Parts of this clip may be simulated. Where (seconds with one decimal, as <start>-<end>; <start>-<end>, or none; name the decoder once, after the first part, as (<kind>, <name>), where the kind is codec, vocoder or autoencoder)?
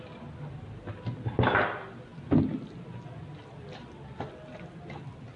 none